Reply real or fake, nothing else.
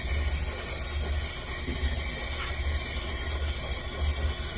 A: real